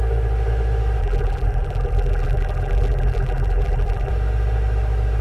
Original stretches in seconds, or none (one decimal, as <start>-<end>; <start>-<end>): 0.0-1.0; 4.1-5.2

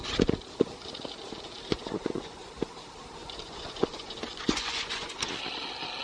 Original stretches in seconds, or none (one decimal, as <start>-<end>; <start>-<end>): 0.0-1.7; 2.5-3.2; 5.3-6.0

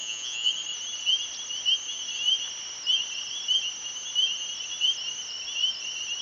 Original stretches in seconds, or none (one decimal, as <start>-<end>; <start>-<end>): 0.5-6.2

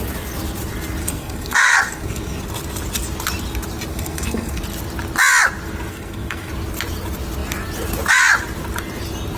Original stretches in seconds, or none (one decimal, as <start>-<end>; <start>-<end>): 0.0-1.0; 2.4-3.9; 4.6-5.9; 6.5-9.4

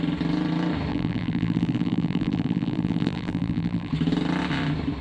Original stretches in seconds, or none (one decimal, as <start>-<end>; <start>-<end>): 0.0-0.9; 3.9-5.0